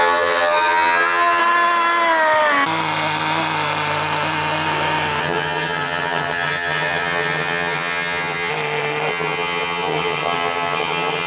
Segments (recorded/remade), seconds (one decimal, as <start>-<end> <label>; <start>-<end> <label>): 0.0-1.4 remade; 1.4-5.2 recorded; 5.2-8.5 remade; 8.5-9.1 recorded; 9.1-11.3 remade